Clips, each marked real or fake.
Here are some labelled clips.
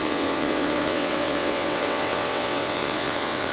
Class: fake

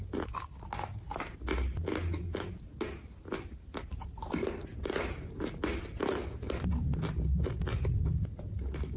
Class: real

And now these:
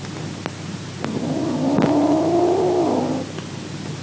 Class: real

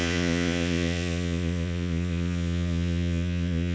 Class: fake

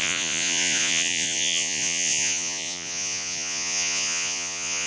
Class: fake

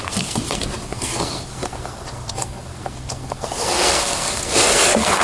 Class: fake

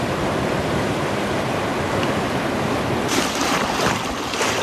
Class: fake